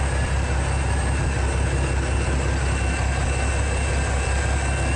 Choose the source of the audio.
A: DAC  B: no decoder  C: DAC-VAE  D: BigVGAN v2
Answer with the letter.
B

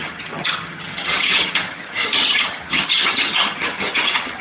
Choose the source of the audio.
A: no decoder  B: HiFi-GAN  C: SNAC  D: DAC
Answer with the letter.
B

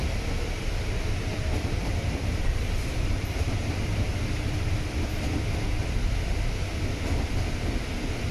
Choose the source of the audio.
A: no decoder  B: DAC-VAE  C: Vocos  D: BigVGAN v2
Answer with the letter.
D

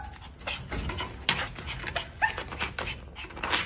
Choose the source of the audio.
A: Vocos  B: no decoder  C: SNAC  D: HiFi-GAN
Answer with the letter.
B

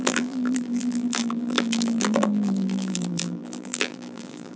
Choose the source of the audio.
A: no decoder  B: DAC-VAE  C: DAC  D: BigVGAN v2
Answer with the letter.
D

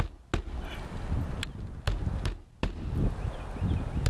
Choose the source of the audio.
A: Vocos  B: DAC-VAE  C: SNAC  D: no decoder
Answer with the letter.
D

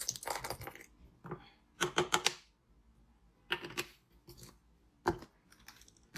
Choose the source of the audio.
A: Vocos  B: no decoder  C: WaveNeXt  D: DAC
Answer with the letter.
B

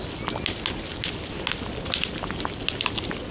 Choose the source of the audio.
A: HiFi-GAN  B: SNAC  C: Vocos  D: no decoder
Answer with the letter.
D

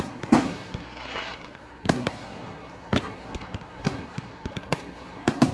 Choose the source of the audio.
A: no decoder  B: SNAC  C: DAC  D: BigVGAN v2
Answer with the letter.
B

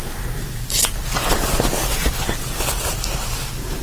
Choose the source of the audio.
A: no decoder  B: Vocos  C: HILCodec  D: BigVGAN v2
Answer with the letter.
A